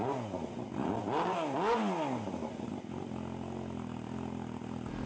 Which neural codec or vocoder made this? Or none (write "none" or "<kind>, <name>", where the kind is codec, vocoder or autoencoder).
none